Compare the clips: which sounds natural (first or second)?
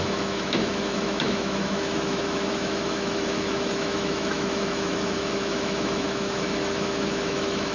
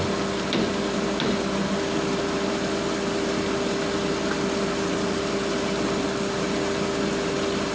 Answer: second